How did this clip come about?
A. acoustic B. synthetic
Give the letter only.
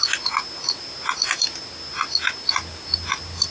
A